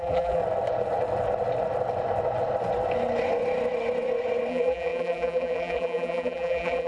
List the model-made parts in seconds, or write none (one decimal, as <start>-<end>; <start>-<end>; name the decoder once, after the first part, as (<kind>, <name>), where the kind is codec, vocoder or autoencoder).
0.0-0.4 (vocoder, BigVGAN v2); 4.5-6.9